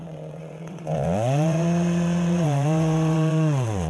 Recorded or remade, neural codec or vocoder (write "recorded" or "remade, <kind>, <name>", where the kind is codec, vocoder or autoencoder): remade, vocoder, WaveNeXt